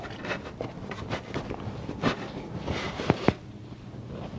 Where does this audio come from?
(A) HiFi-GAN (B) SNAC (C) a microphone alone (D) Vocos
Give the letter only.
C